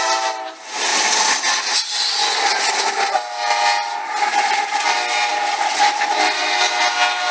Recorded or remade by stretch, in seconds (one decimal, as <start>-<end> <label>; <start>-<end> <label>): 0.0-7.3 recorded